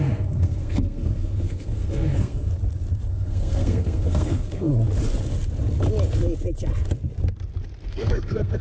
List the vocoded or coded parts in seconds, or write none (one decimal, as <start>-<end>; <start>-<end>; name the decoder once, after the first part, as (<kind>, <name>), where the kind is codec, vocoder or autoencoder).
0.0-2.5 (codec, SNAC); 3.1-4.7; 7.9-8.6